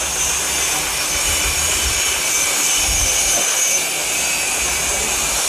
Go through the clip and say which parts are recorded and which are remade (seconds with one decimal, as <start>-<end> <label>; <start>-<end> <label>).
0.0-1.3 recorded; 1.3-2.6 remade; 2.6-4.0 recorded; 4.0-5.5 remade

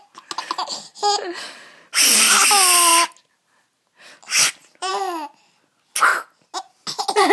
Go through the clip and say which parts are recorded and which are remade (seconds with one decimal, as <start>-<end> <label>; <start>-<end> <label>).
0.0-7.3 recorded